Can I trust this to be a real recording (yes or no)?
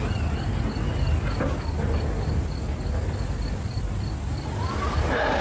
yes